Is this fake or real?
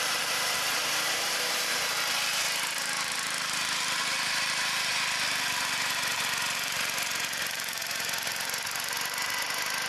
fake